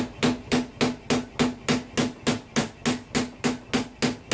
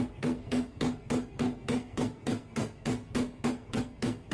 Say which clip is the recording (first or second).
first